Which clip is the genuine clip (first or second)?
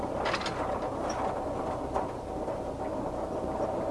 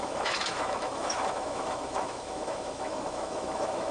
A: first